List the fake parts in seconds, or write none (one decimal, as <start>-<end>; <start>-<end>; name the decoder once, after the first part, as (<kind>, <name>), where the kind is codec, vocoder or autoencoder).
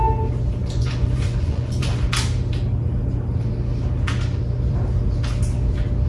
0.6-1.9 (vocoder, Vocos)